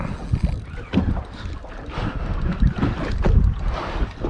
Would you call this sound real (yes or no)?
yes